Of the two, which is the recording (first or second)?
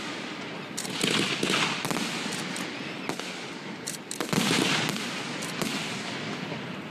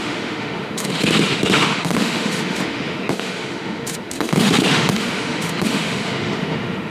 first